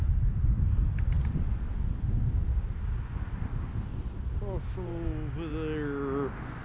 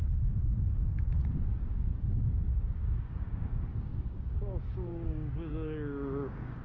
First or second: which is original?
first